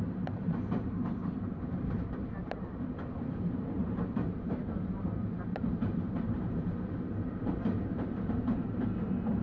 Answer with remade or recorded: remade